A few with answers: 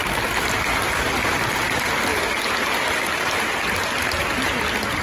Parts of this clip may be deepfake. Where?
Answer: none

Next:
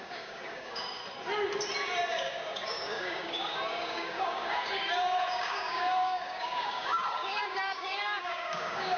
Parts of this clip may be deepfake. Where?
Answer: 0.0-1.0 (codec, DAC); 2.1-9.0